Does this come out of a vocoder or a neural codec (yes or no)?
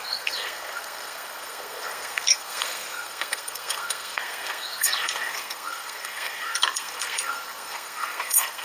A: yes